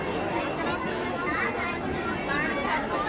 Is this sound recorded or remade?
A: recorded